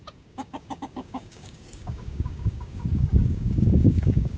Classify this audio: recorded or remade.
remade